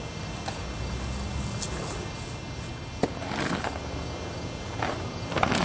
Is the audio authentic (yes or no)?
yes